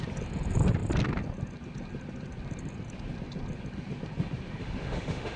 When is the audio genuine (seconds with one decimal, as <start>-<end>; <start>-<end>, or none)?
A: 0.0-4.6

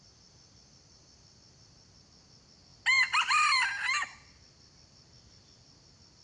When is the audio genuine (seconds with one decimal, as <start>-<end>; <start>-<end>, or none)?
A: 0.0-6.2

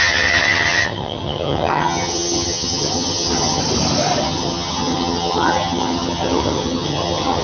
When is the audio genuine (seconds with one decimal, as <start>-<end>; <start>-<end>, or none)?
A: 3.6-4.2

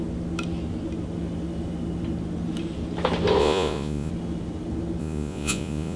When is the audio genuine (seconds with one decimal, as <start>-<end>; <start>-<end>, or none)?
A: 0.0-3.4; 4.1-5.0

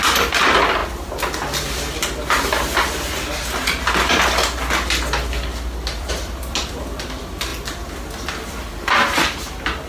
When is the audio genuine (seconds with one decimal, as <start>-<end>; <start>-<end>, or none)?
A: 0.8-6.0; 7.5-9.9

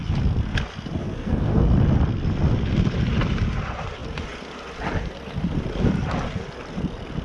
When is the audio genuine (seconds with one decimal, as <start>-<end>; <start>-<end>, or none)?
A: 0.0-1.0; 1.6-7.2